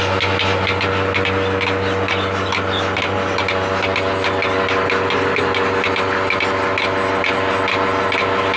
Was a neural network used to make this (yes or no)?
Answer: no